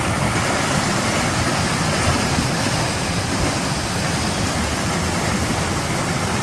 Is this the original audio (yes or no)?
yes